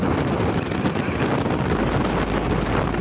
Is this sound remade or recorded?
recorded